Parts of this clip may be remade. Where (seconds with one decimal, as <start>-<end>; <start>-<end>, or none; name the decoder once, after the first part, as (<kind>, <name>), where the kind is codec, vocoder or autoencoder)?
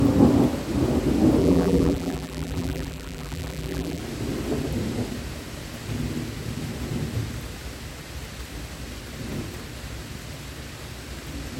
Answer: 1.4-4.0 (vocoder, BigVGAN v2)